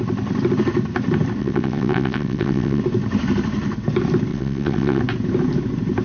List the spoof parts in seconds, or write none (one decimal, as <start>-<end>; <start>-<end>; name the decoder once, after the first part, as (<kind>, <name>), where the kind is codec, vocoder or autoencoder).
1.4-2.8 (vocoder, WaveNeXt); 4.3-5.0